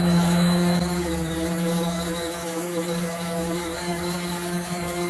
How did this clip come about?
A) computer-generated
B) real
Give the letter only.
A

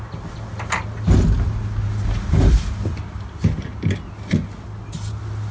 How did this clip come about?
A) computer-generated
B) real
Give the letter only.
B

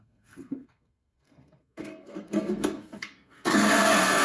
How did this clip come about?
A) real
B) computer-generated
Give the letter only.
B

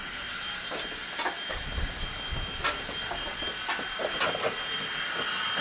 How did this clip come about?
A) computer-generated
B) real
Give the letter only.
B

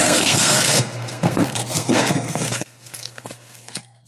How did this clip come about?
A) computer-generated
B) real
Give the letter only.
A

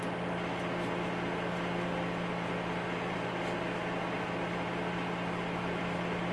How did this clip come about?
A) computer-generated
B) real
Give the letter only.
B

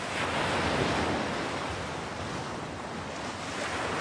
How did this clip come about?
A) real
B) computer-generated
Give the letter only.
A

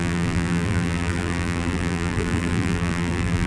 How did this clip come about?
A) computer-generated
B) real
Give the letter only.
A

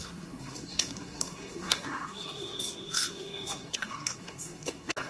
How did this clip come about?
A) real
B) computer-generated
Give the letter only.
B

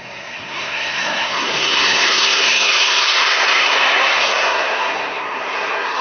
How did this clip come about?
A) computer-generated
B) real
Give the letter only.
A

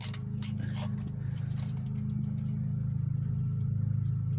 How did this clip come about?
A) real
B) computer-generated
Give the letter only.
A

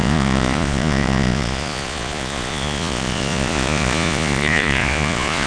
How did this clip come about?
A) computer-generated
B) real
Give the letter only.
A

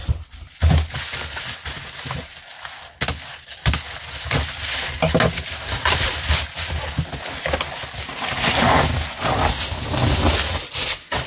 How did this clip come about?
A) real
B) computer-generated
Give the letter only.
A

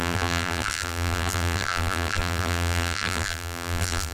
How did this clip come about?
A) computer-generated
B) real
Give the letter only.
A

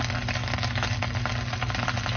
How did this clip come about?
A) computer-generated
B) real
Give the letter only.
B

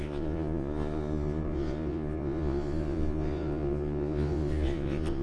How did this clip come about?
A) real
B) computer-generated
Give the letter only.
B